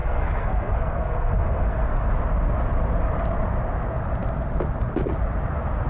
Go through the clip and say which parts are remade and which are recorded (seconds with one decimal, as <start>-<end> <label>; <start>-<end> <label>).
0.0-2.1 remade; 2.1-5.9 recorded